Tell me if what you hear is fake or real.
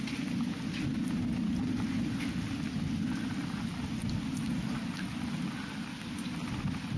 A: real